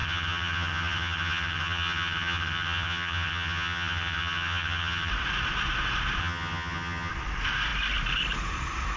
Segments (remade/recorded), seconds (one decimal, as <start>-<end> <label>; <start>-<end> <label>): 0.0-5.1 remade; 5.1-6.2 recorded; 6.2-7.1 remade; 7.1-9.0 recorded